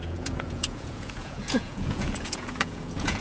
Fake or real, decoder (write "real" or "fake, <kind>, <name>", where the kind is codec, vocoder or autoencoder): fake, vocoder, Vocos